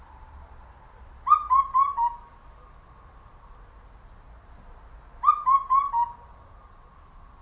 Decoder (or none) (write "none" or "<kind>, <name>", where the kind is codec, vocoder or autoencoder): none